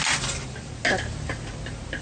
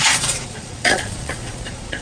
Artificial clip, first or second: second